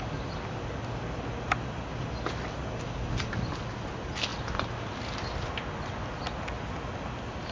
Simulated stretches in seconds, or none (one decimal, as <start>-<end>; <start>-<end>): none